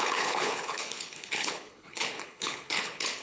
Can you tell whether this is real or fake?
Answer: fake